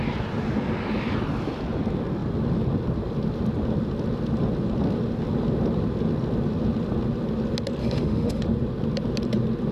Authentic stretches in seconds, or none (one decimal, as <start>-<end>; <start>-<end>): 0.0-7.8; 8.4-9.7